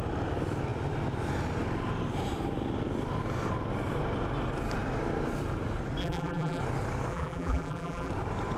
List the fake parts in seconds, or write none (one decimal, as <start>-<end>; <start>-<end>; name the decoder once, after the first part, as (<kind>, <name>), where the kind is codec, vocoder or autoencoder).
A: 6.0-6.6 (vocoder, BigVGAN v2); 7.1-8.1